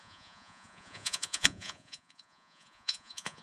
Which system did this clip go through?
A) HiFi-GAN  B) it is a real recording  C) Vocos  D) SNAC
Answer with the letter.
C